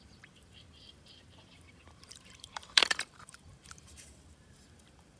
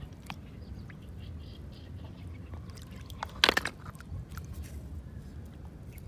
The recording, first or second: second